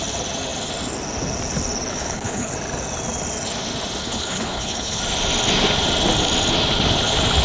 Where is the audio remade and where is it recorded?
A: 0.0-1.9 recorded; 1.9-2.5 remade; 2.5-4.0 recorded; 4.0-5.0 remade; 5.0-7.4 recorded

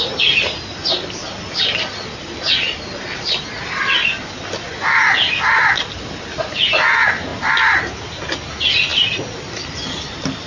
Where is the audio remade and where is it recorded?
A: 0.0-10.5 recorded

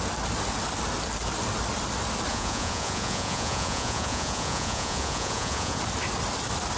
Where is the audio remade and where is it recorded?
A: 0.0-2.3 recorded; 2.3-5.8 remade; 5.8-6.8 recorded

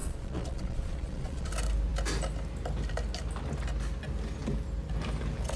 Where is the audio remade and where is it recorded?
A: 0.0-1.5 remade; 1.5-5.6 recorded

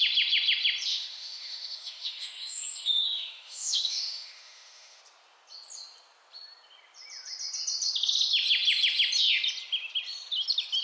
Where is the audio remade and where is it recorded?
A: 0.0-0.9 recorded; 0.9-5.0 remade; 5.0-10.8 recorded

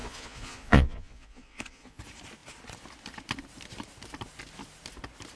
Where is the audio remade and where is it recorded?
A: 0.0-2.0 remade; 2.0-5.4 recorded

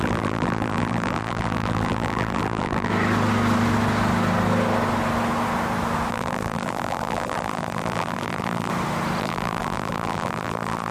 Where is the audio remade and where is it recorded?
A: 0.0-2.9 remade; 2.9-6.1 recorded; 6.1-8.7 remade; 8.7-9.2 recorded; 9.2-10.9 remade

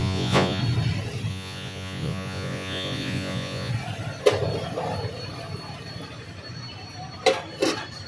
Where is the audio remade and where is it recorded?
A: 0.0-0.6 remade; 0.6-1.3 recorded; 1.3-3.7 remade; 3.7-8.1 recorded